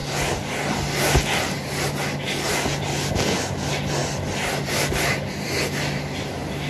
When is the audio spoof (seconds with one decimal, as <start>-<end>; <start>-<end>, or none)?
none